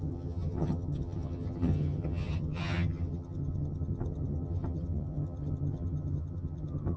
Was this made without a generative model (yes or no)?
no